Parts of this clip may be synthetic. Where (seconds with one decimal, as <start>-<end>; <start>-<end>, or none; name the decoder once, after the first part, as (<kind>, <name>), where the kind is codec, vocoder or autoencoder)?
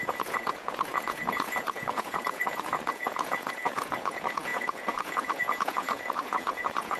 0.0-7.0 (vocoder, Vocos)